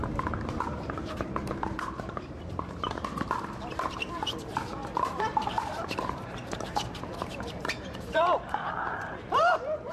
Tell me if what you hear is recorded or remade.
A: remade